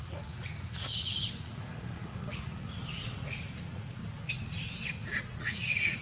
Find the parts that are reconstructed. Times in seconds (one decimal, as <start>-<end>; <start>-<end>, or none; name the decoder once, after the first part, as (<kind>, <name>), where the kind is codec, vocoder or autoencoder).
0.0-4.0 (vocoder, Vocos); 5.0-6.0